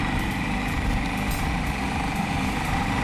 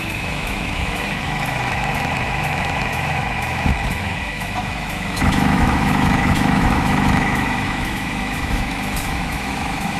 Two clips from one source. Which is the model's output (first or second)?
second